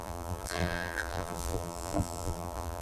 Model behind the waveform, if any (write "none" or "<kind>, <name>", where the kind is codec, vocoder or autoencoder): vocoder, BigVGAN v2